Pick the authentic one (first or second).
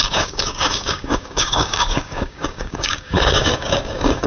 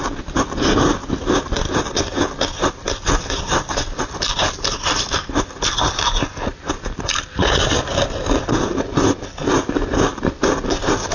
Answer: second